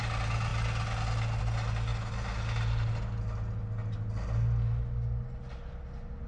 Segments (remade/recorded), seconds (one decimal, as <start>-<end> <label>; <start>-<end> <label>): 0.0-6.3 recorded